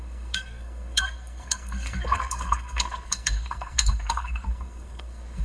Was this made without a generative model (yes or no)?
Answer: no